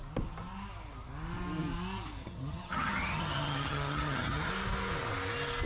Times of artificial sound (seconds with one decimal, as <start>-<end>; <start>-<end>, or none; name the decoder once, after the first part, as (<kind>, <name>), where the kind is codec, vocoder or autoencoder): 2.2-4.5 (vocoder, HiFi-GAN)